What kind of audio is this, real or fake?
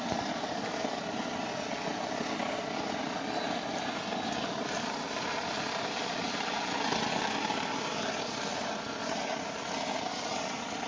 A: real